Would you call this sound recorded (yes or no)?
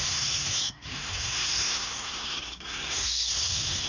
no